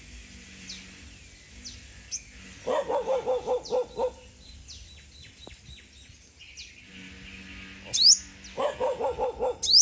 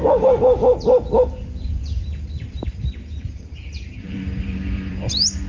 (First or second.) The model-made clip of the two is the second